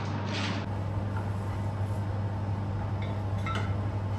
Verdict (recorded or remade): recorded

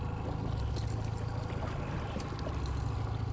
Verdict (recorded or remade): recorded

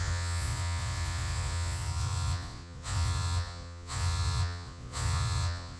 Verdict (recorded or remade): remade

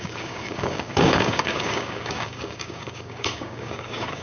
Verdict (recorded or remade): remade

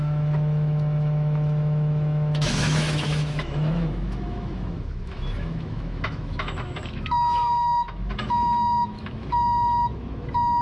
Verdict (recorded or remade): remade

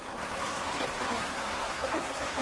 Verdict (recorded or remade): remade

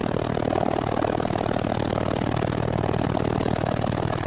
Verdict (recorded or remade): recorded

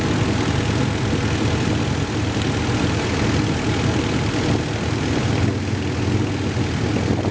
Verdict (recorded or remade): recorded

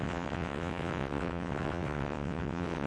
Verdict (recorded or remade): remade